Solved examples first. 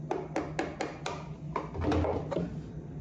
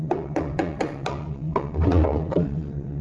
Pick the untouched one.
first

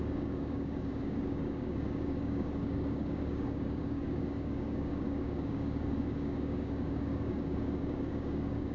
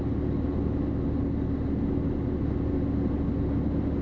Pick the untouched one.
second